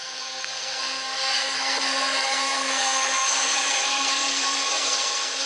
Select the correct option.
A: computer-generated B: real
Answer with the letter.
A